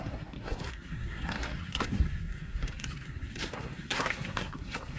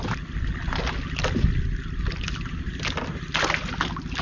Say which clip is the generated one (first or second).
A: first